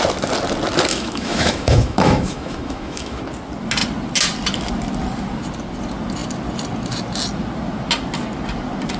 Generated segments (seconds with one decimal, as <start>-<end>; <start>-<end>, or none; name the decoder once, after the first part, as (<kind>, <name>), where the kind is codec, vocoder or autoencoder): 0.9-3.2 (autoencoder, DAC-VAE)